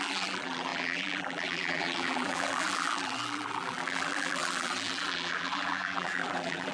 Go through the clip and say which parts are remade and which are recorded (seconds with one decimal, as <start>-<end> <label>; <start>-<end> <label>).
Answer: 0.0-6.7 remade

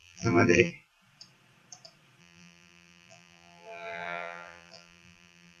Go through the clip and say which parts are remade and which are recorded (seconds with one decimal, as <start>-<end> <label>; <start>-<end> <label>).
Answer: 0.0-0.7 remade; 0.7-2.2 recorded; 2.2-5.6 remade

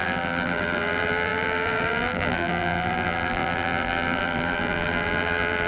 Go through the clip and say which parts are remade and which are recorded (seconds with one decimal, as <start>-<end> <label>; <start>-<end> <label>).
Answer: 0.0-5.7 remade

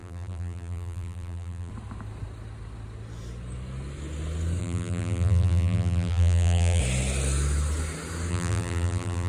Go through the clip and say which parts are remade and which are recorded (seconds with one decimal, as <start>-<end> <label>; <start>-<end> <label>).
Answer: 0.0-1.7 remade; 1.7-4.6 recorded; 4.6-6.8 remade; 6.8-8.3 recorded; 8.3-9.3 remade